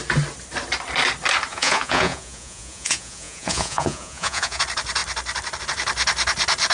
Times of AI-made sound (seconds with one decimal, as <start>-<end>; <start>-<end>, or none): 1.5-4.6